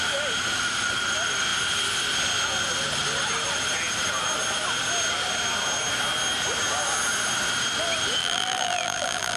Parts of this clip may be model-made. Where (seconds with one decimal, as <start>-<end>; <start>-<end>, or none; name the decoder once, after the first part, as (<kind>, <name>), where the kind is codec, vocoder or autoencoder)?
8.2-9.4 (vocoder, BigVGAN v2)